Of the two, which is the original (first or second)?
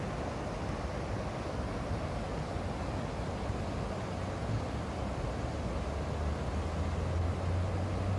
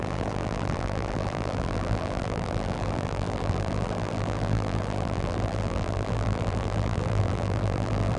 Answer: first